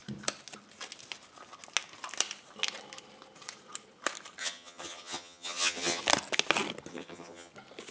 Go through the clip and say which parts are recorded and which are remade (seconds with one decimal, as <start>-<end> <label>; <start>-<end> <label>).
0.0-4.4 recorded; 4.4-6.0 remade; 6.0-6.9 recorded; 6.9-7.5 remade; 7.5-7.9 recorded